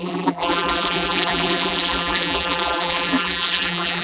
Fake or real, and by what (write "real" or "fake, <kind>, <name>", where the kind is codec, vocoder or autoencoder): fake, vocoder, BigVGAN v2